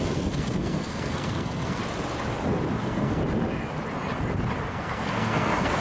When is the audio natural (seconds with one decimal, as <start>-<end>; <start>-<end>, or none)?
1.8-2.8; 3.2-4.7

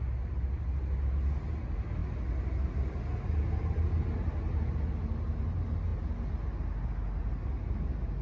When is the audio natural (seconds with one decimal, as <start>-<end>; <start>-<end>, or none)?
0.0-8.2

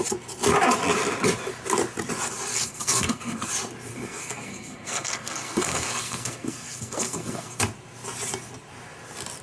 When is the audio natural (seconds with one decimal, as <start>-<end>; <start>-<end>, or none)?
0.0-2.5; 3.5-3.9; 7.6-9.4

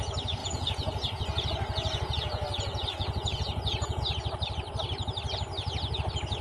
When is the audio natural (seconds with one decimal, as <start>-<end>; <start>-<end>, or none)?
0.0-0.4; 4.0-6.4